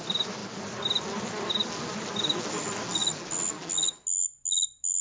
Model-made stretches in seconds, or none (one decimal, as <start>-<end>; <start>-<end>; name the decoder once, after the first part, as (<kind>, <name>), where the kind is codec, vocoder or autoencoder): none